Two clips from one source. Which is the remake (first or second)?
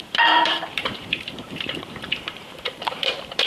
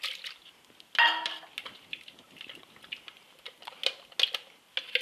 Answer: first